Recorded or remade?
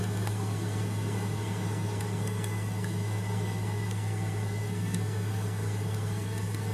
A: remade